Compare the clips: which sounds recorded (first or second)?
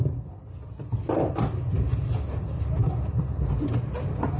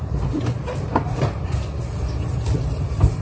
first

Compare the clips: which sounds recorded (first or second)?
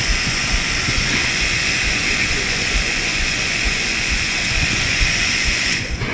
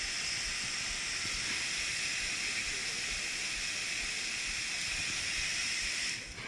second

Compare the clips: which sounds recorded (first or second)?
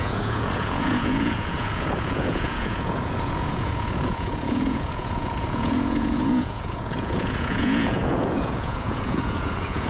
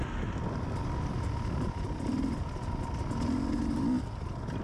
second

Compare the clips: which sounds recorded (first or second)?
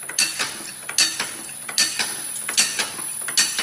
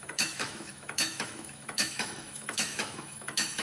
first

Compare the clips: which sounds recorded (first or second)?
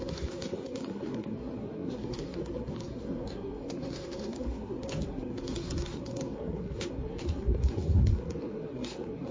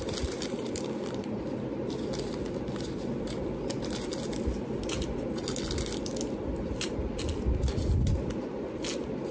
second